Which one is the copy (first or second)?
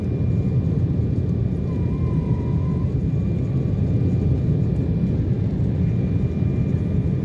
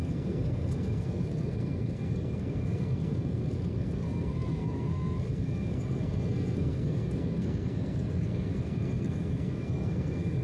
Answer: second